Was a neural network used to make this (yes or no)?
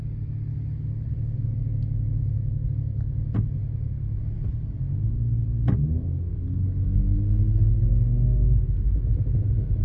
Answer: no